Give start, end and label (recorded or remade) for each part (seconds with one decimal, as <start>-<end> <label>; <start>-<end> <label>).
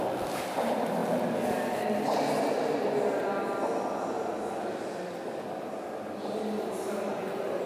0.0-7.7 recorded